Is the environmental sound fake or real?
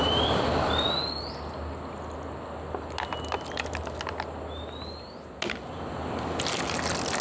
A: real